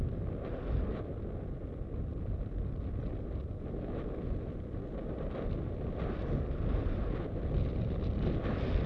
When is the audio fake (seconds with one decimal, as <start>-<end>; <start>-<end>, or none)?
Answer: none